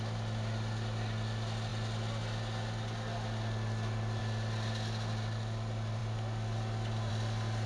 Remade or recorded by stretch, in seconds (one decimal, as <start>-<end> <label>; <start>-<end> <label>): 0.0-7.7 recorded